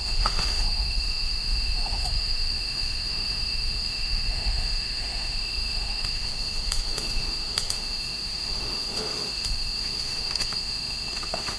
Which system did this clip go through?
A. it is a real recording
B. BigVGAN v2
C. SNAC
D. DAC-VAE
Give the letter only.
D